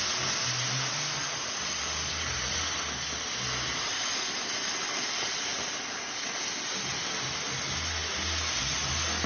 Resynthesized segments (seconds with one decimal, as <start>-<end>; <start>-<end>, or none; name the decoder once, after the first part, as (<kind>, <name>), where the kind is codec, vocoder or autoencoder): none